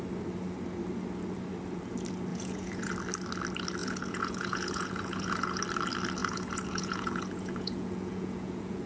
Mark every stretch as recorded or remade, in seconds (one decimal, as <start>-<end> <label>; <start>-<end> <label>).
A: 0.0-2.3 recorded; 2.3-2.9 remade; 2.9-3.8 recorded; 3.8-5.6 remade; 5.6-6.2 recorded; 6.2-8.9 remade